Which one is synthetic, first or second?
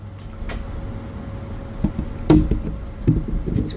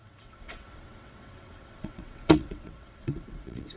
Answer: second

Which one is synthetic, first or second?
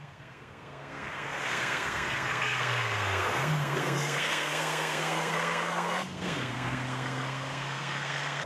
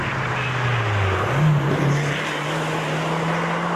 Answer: first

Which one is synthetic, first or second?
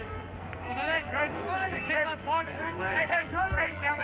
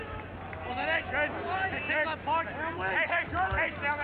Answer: first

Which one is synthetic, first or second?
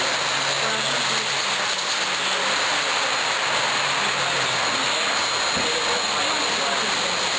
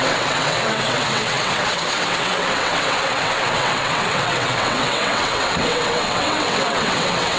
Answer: second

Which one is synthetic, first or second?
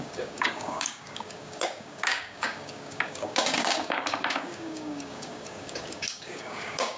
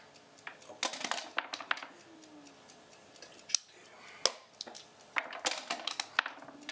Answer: first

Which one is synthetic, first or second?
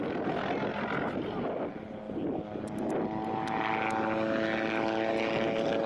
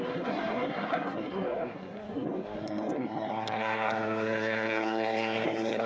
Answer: second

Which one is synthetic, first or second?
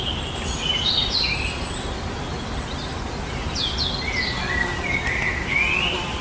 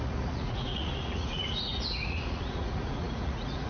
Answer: second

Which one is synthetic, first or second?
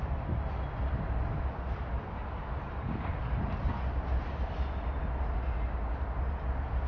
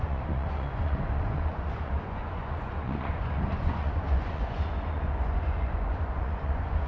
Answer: second